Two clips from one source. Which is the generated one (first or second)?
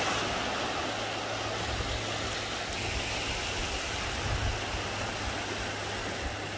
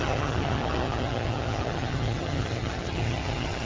second